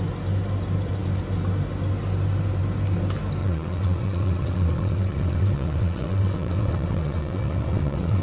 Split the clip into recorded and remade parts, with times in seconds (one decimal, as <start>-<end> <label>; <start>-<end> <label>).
0.0-3.4 recorded; 3.4-8.2 remade